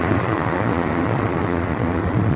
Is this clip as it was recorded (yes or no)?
no